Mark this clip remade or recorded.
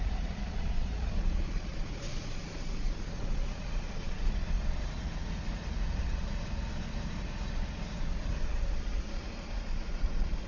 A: remade